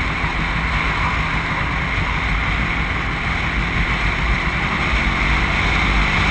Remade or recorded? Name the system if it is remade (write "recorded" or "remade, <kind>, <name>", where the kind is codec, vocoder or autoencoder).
recorded